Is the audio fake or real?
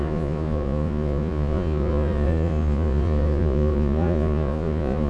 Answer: fake